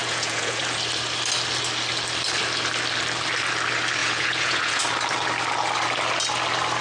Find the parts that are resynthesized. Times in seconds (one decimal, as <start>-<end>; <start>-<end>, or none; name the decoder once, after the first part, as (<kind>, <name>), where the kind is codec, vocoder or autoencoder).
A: 0.0-0.6 (vocoder, Vocos); 4.0-4.8